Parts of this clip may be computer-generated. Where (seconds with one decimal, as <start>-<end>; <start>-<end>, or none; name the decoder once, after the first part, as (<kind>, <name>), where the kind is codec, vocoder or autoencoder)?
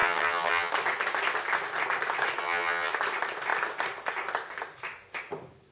0.0-0.7 (vocoder, HiFi-GAN); 2.4-2.9